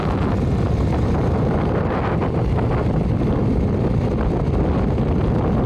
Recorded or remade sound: recorded